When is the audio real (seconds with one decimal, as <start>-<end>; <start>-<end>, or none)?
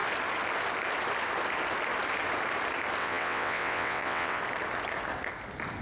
0.0-3.0; 4.4-5.8